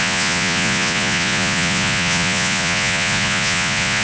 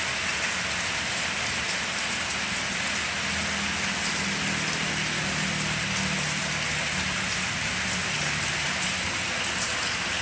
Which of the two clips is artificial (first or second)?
first